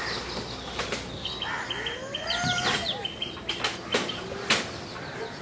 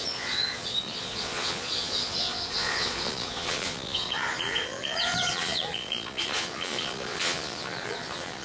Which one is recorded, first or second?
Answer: first